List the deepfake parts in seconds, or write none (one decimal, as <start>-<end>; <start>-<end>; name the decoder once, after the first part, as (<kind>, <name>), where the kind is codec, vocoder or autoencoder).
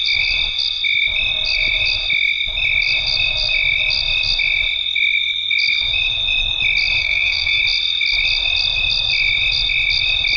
7.0-7.6 (codec, SNAC)